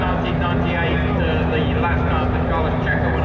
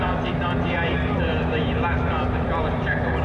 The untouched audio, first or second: first